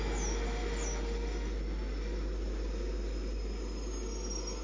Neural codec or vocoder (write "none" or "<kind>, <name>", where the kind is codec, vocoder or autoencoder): none